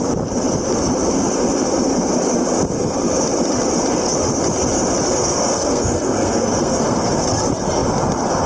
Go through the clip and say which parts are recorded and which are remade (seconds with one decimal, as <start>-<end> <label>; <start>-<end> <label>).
0.0-5.2 recorded; 5.2-7.1 remade; 7.1-8.5 recorded